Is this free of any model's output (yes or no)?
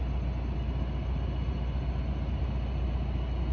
yes